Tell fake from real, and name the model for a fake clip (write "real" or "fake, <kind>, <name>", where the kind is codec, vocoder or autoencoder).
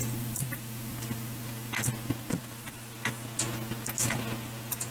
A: real